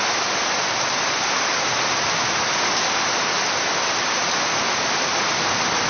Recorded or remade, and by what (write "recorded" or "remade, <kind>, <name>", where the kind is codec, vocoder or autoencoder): recorded